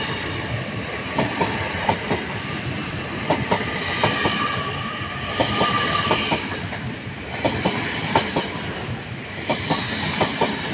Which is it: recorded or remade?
remade